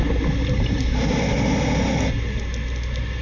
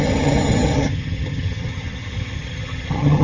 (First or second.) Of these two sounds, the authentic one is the first